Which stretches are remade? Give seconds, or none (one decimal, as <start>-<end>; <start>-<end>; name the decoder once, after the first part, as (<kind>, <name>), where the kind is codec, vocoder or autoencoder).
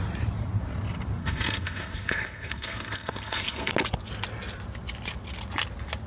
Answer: 1.2-3.7 (codec, SNAC)